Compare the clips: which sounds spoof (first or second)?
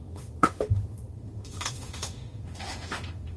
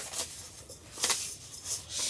first